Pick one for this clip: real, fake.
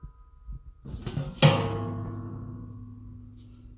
real